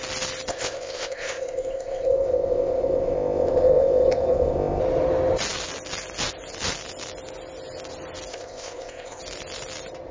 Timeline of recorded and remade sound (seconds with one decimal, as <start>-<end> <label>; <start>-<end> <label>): 0.0-0.5 recorded; 0.5-4.8 remade; 4.8-8.3 recorded; 8.3-9.2 remade; 9.2-10.1 recorded